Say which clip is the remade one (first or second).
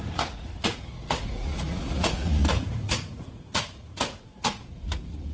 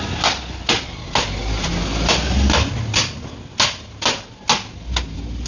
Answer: first